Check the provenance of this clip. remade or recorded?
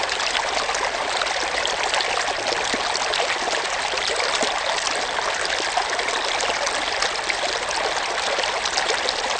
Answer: recorded